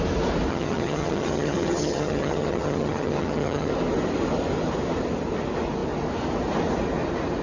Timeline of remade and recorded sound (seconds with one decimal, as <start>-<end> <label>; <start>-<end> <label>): 0.0-0.5 recorded; 0.5-3.7 remade; 3.7-7.4 recorded